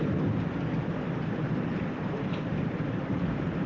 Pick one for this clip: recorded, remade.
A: remade